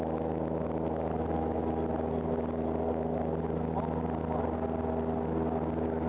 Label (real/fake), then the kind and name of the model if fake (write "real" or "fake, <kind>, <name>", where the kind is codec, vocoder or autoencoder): real